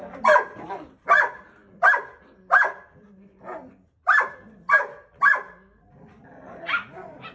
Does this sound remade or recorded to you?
recorded